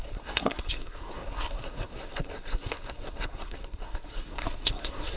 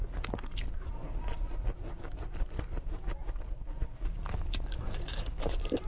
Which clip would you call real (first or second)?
second